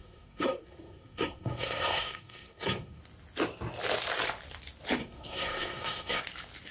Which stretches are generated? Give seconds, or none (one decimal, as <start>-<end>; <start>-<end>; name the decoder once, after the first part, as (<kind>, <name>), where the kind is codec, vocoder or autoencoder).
0.0-3.0 (codec, SNAC); 5.0-6.2